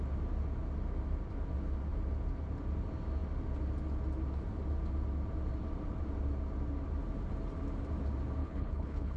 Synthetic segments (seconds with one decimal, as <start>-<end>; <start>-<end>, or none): 8.4-9.2